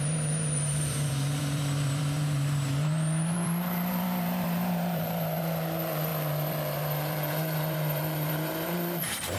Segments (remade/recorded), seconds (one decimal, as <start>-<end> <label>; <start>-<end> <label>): 0.0-9.4 remade